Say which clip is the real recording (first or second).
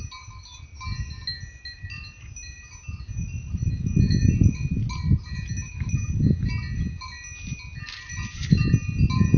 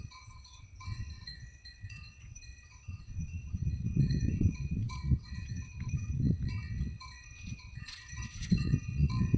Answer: first